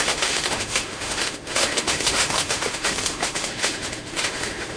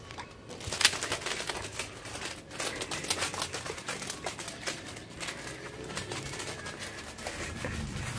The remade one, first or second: first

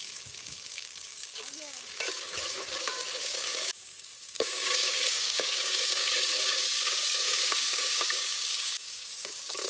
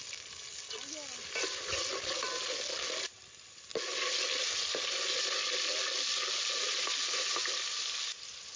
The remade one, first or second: first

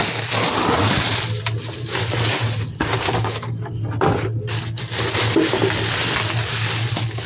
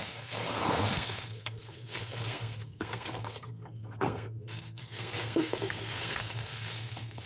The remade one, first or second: second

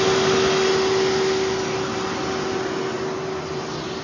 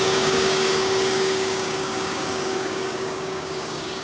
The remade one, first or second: second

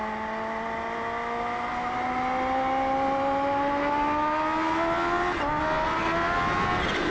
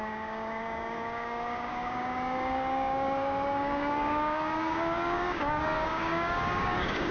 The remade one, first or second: second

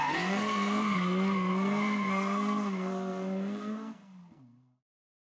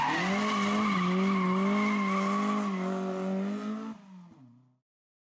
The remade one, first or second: first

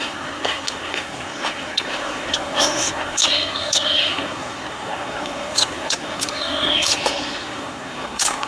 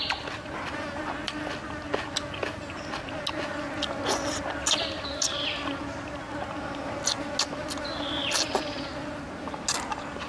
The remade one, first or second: first